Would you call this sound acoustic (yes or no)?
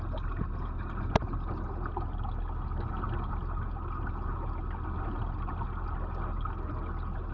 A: yes